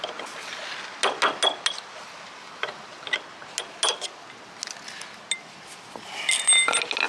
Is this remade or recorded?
recorded